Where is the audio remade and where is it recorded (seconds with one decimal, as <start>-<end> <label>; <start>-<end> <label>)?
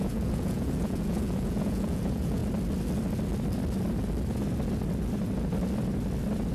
0.0-2.4 remade; 2.4-6.5 recorded